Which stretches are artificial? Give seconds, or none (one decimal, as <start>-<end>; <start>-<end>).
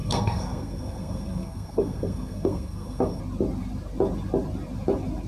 0.0-3.2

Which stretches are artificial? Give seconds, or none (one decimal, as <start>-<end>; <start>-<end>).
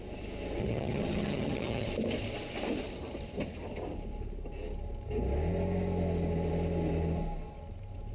0.6-1.9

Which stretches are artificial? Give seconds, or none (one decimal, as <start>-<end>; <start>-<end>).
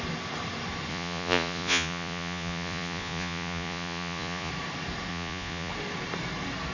0.9-4.5; 5.1-5.7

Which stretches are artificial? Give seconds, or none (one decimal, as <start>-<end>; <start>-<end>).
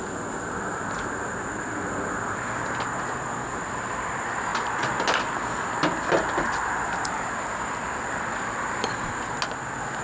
none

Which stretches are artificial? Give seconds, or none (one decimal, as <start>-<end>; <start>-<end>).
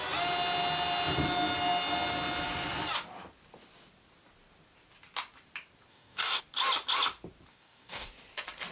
5.9-6.4; 7.5-8.1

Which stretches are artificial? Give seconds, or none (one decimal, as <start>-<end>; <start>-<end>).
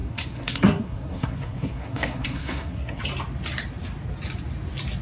0.0-3.0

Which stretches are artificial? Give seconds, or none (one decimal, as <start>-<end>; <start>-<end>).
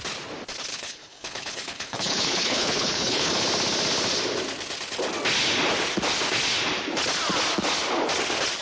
0.7-3.3